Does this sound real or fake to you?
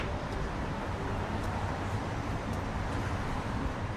fake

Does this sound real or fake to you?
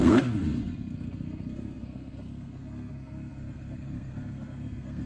fake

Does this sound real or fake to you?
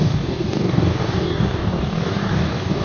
fake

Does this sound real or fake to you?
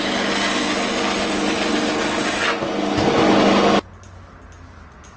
real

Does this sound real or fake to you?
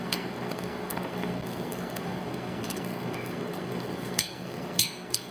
fake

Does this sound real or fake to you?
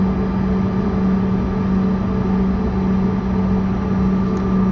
real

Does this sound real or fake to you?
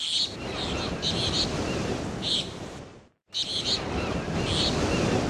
real